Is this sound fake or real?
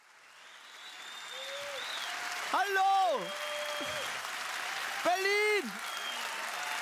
real